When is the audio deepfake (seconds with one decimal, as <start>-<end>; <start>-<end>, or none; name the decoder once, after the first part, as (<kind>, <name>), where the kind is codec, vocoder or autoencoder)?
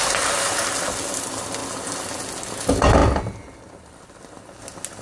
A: none